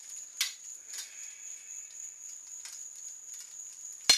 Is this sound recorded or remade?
recorded